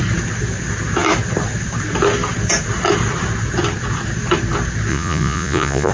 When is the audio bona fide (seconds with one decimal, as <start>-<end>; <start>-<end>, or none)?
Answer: 0.0-4.9